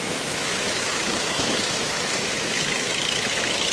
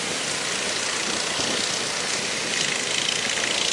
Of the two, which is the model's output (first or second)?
first